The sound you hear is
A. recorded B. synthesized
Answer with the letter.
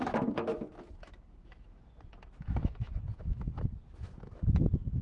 B